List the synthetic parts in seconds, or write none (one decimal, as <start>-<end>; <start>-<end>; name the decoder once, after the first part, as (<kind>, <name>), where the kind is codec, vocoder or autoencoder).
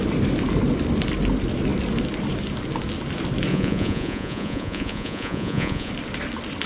3.5-5.9 (vocoder, Vocos)